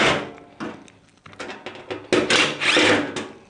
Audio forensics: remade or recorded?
recorded